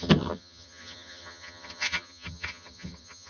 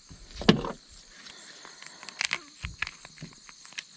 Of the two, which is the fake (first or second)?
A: first